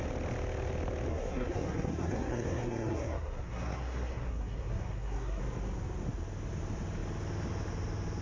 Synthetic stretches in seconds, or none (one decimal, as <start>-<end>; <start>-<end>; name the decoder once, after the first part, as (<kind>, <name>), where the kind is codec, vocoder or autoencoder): 1.1-5.4 (codec, SNAC)

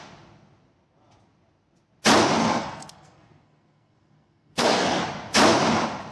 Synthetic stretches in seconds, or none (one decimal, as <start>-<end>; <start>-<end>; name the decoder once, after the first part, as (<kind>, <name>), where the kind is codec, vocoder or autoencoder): 2.4-5.0 (codec, SNAC)

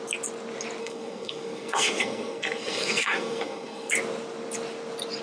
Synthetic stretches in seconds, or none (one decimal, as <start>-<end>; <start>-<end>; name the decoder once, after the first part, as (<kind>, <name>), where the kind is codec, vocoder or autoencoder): 0.8-3.9 (codec, SNAC)

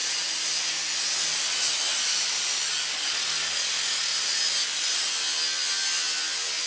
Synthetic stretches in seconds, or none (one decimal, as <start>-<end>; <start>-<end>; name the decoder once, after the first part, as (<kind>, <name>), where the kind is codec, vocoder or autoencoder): none